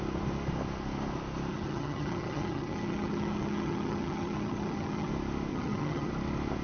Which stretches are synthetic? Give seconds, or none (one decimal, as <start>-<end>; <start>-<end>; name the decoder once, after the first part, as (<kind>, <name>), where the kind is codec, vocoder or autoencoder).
1.5-5.1 (vocoder, HiFi-GAN); 5.5-6.1

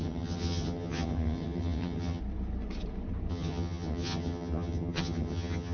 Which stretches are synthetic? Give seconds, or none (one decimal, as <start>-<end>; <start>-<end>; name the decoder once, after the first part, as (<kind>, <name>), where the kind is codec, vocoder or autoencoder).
0.0-2.2 (vocoder, HiFi-GAN); 3.3-5.7

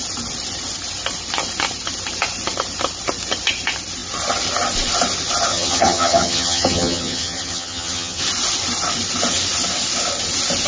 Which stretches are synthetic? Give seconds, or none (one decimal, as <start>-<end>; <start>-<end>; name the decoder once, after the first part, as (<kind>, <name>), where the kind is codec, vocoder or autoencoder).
5.5-8.2 (vocoder, HiFi-GAN)